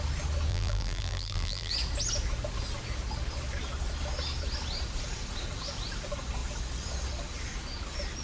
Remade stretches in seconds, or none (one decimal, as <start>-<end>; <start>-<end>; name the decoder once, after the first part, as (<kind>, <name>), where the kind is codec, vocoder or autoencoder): 0.5-1.7 (vocoder, BigVGAN v2)